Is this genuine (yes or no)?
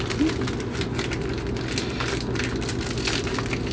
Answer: yes